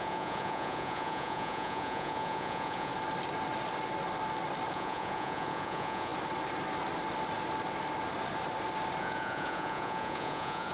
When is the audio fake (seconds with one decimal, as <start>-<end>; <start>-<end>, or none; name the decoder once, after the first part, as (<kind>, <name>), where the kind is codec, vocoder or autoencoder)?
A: 0.0-2.9 (vocoder, Vocos); 4.7-6.1; 9.0-10.7